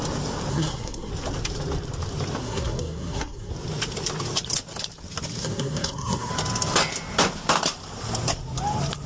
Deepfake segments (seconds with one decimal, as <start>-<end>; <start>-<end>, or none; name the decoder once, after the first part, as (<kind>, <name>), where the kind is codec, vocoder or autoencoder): 0.5-1.1 (codec, SNAC); 2.4-3.5; 5.4-6.3